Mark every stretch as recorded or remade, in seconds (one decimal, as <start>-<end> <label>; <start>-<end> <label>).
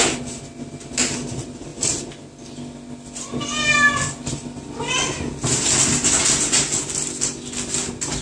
0.0-8.2 recorded